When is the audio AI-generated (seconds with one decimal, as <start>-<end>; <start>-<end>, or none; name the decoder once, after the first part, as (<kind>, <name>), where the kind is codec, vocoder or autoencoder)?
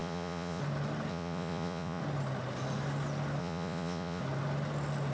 0.0-0.6 (vocoder, Vocos); 1.1-2.0; 3.4-4.2